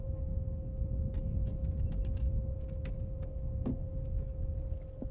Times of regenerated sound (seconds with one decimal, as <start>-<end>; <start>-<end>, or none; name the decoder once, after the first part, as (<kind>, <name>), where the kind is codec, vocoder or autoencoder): none